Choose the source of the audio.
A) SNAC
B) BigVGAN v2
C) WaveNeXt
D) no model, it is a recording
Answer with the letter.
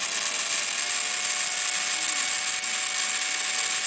D